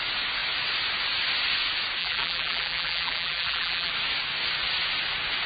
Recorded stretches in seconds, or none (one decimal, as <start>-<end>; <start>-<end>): 0.0-2.0; 3.9-5.5